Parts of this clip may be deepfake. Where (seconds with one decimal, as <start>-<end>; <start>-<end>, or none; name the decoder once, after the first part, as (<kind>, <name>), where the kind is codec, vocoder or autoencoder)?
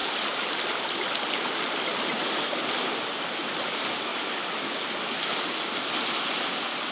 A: 0.0-0.6 (vocoder, BigVGAN v2)